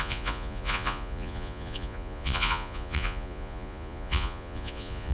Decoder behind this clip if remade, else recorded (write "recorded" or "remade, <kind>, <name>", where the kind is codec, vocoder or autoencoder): remade, vocoder, Vocos